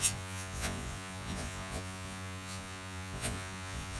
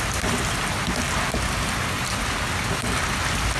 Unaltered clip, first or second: second